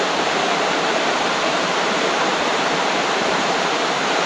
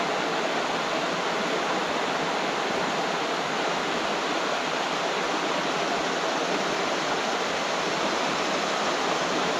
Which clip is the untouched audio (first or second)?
second